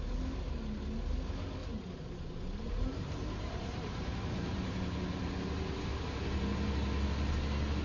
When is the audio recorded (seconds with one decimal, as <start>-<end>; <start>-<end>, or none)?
0.0-1.6; 5.3-7.8